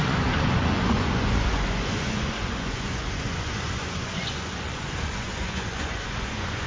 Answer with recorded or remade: remade